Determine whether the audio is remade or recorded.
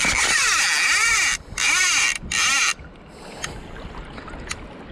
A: recorded